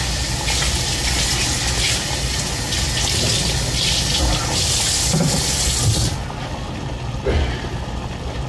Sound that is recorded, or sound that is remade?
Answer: recorded